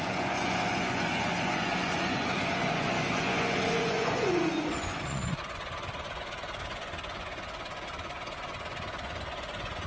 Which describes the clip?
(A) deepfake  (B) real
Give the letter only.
A